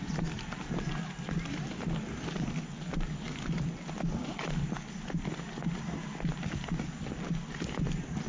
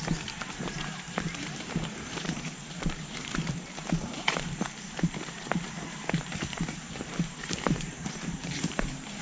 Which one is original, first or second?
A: first